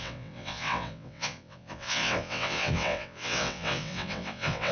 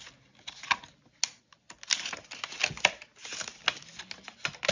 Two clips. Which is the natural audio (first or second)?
second